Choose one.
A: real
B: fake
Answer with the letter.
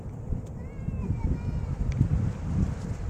B